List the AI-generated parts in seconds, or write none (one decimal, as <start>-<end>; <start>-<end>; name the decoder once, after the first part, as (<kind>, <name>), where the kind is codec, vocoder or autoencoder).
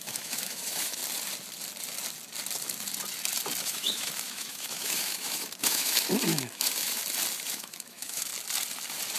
0.0-1.0 (autoencoder, DAC-VAE); 3.6-7.0; 7.5-8.3